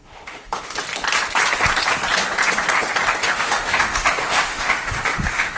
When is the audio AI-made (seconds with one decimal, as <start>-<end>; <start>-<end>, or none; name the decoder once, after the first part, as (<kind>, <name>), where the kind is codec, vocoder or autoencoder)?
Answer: 0.0-0.8 (autoencoder, DAC-VAE); 3.2-5.6